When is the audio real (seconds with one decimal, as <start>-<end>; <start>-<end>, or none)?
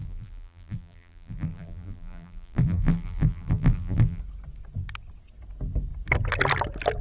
4.2-7.0